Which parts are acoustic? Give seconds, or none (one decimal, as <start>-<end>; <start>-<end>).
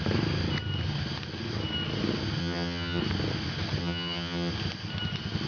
0.0-2.4; 3.0-3.8; 4.5-5.5